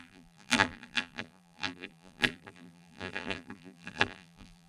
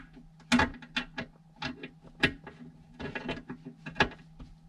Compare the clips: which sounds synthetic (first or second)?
first